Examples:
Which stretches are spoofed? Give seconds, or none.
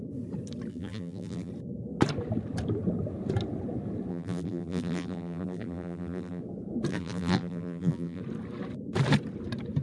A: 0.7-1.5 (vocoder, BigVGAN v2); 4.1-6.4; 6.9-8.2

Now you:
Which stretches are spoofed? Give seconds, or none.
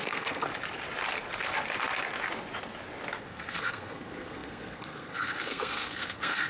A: 0.0-0.5 (codec, SNAC); 3.2-6.5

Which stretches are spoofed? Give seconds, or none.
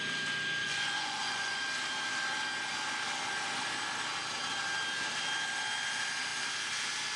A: 0.6-1.6 (vocoder, Vocos)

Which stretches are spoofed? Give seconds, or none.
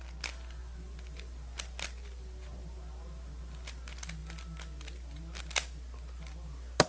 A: none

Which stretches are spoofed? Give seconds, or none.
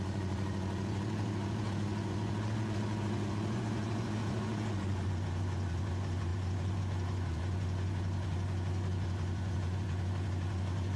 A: 0.0-11.0 (vocoder, Vocos)